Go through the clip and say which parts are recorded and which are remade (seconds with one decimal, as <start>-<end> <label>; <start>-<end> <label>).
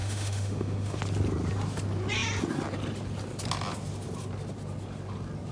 0.0-1.0 remade; 1.0-5.5 recorded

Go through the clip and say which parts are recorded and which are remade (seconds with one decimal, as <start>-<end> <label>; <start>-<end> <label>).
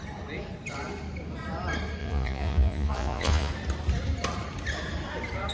0.0-2.0 recorded; 2.0-3.5 remade; 3.5-5.5 recorded